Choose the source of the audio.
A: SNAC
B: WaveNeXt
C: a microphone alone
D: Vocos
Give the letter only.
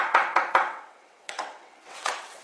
B